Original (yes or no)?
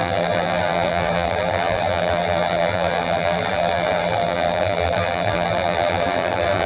no